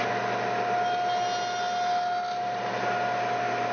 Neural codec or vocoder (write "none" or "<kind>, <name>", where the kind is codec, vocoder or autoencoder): none